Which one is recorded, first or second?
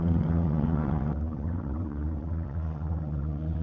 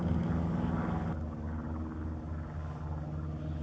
second